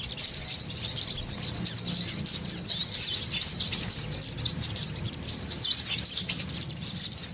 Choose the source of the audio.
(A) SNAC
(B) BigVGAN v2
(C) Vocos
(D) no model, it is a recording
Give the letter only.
D